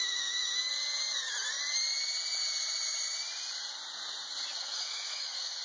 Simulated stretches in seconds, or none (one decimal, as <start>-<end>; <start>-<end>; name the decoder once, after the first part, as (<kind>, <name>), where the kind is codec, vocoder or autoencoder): 0.0-0.7 (autoencoder, DAC-VAE); 4.5-5.6

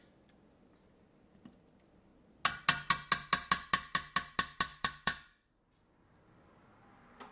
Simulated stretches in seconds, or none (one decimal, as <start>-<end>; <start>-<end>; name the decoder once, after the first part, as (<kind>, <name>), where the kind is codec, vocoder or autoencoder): 4.7-5.5 (vocoder, BigVGAN v2)

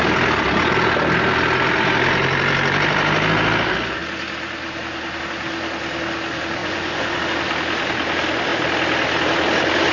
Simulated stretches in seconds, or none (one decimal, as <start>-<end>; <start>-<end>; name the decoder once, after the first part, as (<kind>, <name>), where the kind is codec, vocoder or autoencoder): 6.6-7.2 (vocoder, Vocos)